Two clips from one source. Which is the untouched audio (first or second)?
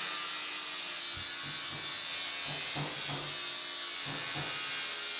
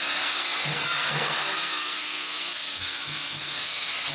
first